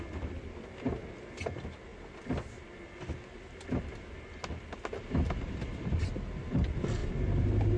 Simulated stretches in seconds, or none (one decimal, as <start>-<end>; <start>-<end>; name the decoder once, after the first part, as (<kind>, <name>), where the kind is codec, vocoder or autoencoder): none